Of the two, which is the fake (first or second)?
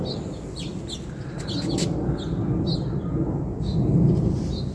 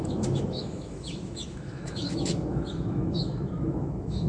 second